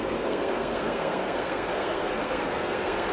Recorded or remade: remade